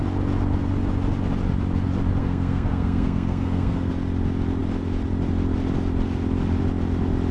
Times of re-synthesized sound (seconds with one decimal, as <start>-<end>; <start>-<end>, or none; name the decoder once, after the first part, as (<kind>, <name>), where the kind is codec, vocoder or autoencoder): 2.2-3.9 (codec, SNAC)